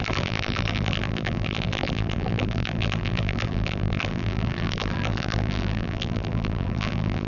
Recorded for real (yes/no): no